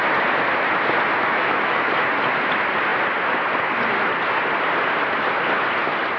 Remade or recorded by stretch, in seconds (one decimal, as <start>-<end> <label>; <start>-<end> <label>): 0.0-1.3 recorded; 1.3-1.9 remade; 1.9-6.2 recorded